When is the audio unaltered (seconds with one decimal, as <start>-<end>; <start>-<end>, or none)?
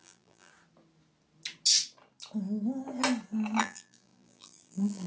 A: 0.5-3.6